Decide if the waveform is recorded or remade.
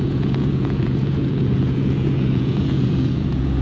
remade